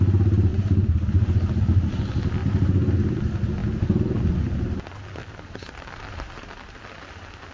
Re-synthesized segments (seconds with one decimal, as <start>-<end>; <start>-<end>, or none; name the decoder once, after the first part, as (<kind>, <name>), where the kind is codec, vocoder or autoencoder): 0.5-1.6 (vocoder, BigVGAN v2); 2.4-3.2

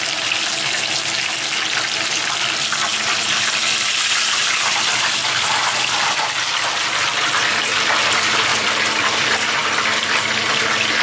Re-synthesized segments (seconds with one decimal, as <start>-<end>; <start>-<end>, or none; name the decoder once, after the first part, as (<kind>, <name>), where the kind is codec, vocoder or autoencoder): 2.9-3.4 (vocoder, BigVGAN v2); 8.5-9.1

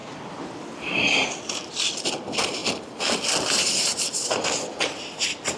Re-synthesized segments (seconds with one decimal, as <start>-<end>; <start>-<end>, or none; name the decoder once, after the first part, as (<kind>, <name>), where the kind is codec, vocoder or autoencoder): none

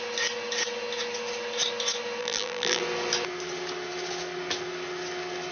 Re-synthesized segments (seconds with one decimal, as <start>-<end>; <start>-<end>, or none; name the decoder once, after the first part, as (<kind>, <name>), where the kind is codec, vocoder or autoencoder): 2.2-2.8 (vocoder, BigVGAN v2)